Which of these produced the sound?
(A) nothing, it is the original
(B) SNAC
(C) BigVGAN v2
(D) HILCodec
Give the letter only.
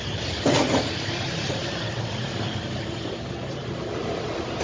C